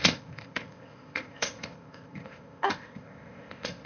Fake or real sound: fake